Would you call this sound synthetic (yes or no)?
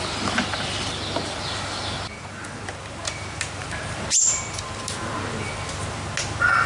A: no